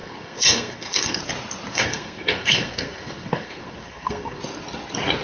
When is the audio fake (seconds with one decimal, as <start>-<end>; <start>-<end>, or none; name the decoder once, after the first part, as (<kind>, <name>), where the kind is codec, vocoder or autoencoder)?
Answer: 0.0-1.2 (codec, SNAC); 1.7-4.4